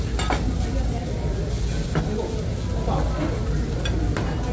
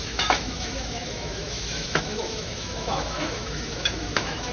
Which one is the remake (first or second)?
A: second